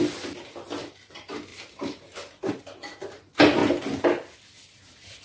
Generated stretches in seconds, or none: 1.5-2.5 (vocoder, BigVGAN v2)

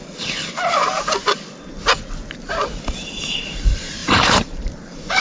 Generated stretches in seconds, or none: 4.0-5.2 (vocoder, BigVGAN v2)